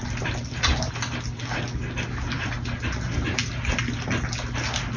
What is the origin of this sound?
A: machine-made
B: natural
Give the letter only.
B